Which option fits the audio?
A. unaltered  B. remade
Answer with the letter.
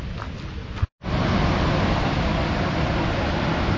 A